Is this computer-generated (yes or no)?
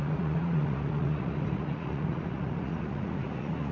yes